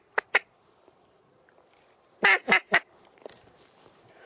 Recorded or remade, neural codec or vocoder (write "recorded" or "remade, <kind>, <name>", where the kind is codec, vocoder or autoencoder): remade, vocoder, BigVGAN v2